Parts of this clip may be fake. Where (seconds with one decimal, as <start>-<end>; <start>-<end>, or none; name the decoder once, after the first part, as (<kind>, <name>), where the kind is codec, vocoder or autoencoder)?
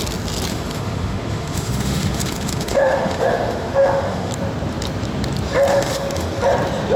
0.5-4.3 (autoencoder, DAC-VAE); 5.7-6.3